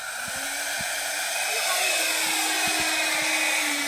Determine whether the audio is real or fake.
real